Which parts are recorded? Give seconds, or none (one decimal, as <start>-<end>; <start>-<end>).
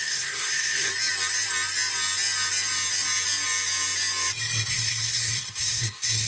0.9-4.7